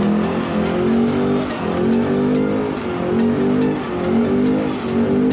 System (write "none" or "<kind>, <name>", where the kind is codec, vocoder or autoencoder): none